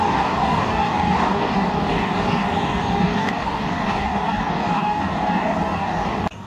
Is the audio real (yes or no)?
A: no